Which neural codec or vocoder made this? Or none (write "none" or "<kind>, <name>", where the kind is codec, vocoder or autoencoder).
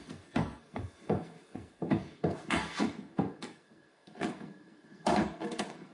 codec, SNAC